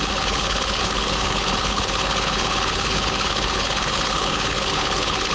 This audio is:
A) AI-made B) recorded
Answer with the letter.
A